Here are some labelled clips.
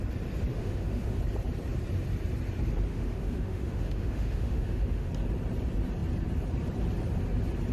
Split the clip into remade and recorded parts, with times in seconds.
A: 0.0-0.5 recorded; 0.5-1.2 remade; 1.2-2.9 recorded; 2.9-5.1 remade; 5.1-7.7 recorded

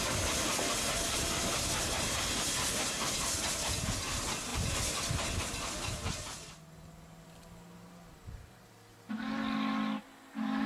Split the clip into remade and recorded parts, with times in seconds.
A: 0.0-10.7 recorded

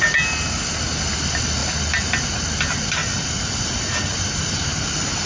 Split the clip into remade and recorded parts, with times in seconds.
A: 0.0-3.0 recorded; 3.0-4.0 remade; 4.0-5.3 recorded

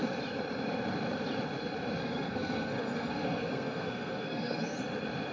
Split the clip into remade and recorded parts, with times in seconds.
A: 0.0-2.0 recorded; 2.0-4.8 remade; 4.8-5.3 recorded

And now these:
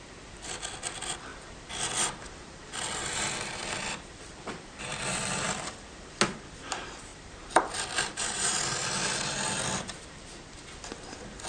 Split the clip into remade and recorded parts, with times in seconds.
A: 0.0-1.3 recorded; 1.3-6.2 remade; 6.2-7.1 recorded; 7.1-8.5 remade; 8.5-11.5 recorded

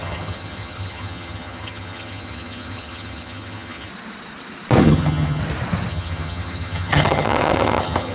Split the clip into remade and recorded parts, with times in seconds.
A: 0.0-3.9 remade; 3.9-4.8 recorded; 4.8-5.4 remade; 5.4-5.9 recorded; 5.9-8.1 remade

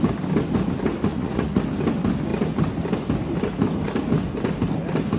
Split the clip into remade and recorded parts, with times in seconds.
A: 0.0-1.1 recorded; 1.1-1.6 remade; 1.6-5.2 recorded

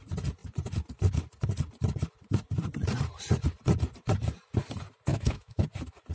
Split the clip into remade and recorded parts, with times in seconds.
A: 0.0-5.1 recorded; 5.1-5.6 remade; 5.6-6.1 recorded